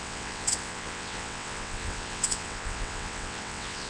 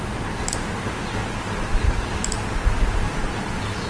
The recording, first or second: second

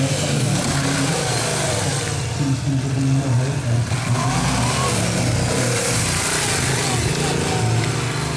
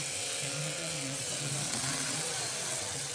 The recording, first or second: first